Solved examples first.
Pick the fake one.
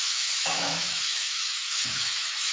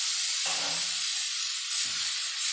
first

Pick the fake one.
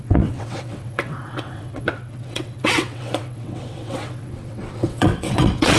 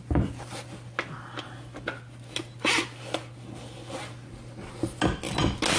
first